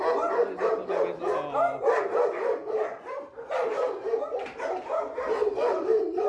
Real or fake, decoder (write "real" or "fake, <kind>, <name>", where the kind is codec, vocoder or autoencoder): real